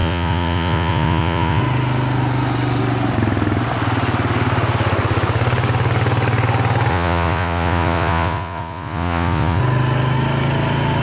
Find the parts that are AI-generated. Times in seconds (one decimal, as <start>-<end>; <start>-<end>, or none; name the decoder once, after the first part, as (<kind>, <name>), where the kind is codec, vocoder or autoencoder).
0.0-1.6 (vocoder, Vocos); 6.9-9.6